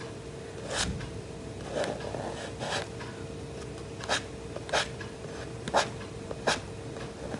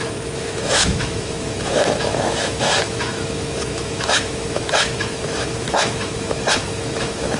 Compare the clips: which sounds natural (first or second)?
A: first